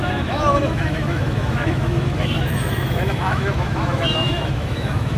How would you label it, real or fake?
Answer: fake